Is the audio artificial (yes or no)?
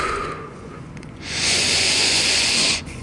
yes